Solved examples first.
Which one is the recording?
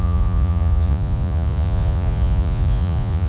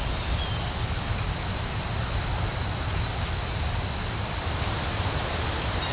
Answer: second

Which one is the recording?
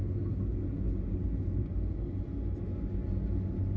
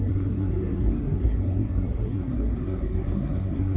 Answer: first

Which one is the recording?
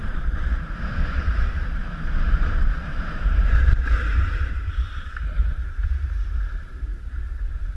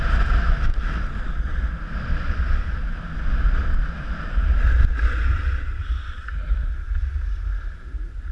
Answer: second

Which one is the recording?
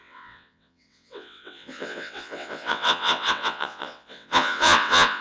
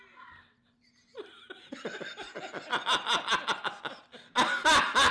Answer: second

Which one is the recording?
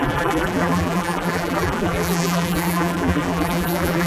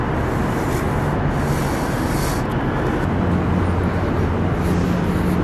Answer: second